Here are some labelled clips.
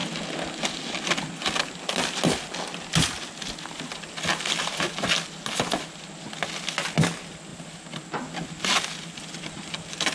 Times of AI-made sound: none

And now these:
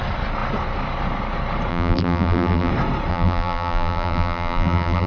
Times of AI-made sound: 1.7-2.7 (vocoder, BigVGAN v2); 3.1-5.1